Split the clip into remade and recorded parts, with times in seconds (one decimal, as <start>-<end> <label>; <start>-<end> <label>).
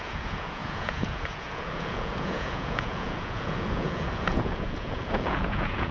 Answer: 0.0-5.9 remade